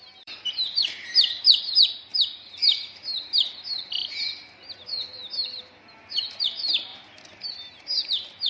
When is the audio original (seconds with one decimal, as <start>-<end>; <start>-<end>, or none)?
2.1-6.2; 6.9-7.5